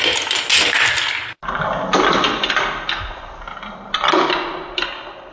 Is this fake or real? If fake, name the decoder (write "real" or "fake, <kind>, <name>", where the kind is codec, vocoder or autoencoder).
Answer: real